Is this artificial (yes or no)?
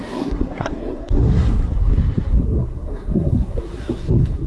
yes